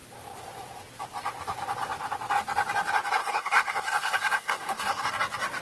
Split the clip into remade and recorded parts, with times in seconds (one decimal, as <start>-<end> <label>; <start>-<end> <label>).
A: 0.0-3.2 recorded; 3.2-5.1 remade; 5.1-5.6 recorded

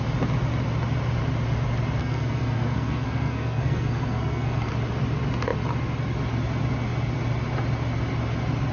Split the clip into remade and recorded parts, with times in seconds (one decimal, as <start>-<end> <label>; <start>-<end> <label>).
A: 0.0-2.0 recorded; 2.0-4.7 remade; 4.7-8.7 recorded

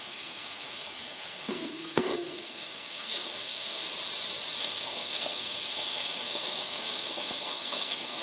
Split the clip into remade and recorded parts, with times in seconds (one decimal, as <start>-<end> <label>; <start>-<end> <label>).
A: 0.0-3.8 remade; 3.8-4.6 recorded; 4.6-8.2 remade

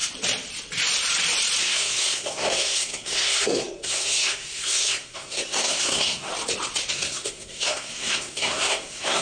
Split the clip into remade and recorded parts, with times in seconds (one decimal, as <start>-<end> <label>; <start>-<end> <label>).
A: 0.0-1.6 recorded; 1.6-6.3 remade; 6.3-6.9 recorded; 6.9-9.2 remade

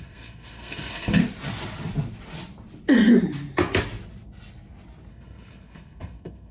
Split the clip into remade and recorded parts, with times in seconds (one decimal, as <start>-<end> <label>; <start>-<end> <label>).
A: 0.0-1.2 remade; 1.2-5.1 recorded; 5.1-6.5 remade

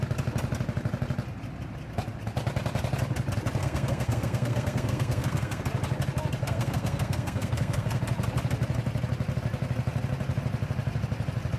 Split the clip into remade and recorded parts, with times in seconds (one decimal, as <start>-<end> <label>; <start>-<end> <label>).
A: 0.0-3.6 recorded; 3.6-5.6 remade; 5.6-6.4 recorded; 6.4-8.0 remade; 8.0-11.6 recorded

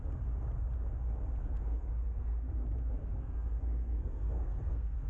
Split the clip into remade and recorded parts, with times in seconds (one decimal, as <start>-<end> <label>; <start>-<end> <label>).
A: 0.0-1.4 recorded; 1.4-2.5 remade; 2.5-3.0 recorded; 3.0-5.1 remade